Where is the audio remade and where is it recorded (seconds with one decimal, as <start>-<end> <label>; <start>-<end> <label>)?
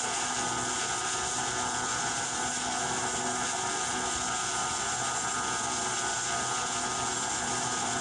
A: 0.0-8.0 recorded